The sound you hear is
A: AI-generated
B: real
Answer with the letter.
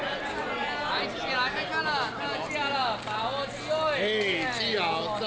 B